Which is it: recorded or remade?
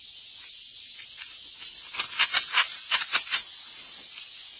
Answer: recorded